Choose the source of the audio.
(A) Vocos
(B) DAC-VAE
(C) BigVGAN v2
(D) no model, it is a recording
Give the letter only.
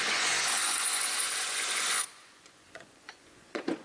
A